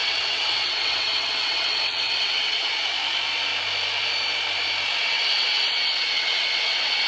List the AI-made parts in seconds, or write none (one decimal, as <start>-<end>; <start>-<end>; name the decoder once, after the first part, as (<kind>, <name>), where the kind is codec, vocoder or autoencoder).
0.0-2.7 (vocoder, WaveNeXt); 5.0-7.1